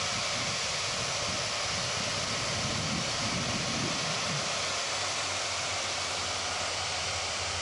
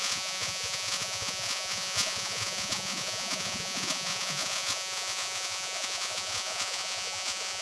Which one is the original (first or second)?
first